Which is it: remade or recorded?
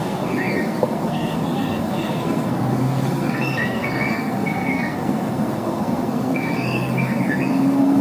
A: remade